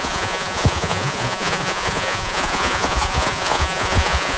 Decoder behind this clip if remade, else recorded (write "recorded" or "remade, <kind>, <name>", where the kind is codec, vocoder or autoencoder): remade, vocoder, Vocos